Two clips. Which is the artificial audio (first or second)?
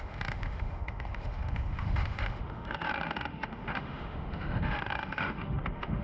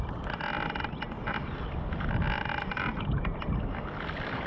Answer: first